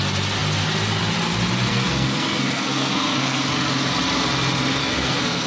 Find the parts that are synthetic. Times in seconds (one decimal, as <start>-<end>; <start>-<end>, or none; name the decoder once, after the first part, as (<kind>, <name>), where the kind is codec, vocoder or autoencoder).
1.7-3.5 (codec, SNAC); 4.8-5.5